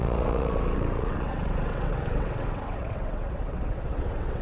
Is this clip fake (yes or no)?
yes